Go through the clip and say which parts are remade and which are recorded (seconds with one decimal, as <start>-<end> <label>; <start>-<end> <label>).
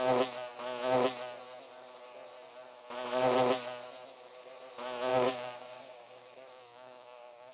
0.0-5.1 recorded; 5.1-7.5 remade